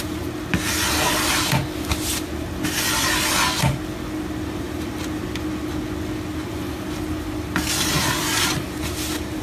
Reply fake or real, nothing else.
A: real